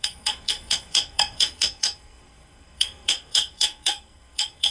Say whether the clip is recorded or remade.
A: remade